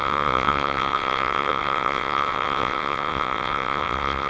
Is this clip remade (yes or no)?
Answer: yes